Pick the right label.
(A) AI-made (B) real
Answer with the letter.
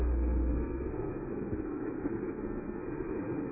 A